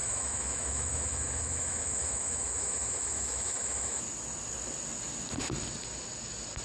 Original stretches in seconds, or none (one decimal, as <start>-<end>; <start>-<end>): 4.0-6.6